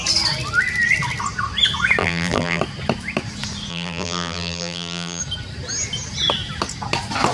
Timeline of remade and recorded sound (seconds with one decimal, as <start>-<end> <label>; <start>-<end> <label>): 0.0-2.0 recorded; 2.0-2.6 remade; 2.6-3.7 recorded; 3.7-5.2 remade; 5.2-7.3 recorded